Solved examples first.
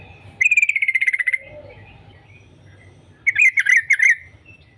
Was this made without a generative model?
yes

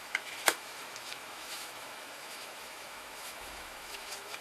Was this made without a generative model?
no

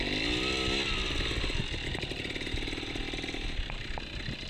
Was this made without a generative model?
yes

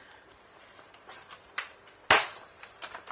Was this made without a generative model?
no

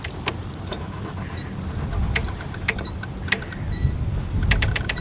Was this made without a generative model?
no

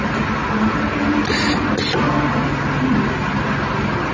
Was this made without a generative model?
yes